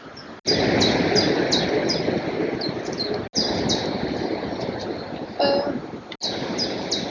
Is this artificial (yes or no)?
no